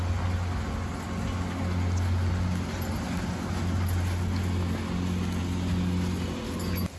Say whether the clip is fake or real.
real